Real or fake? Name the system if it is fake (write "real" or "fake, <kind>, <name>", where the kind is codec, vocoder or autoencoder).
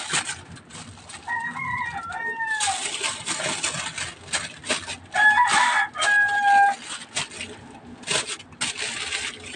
real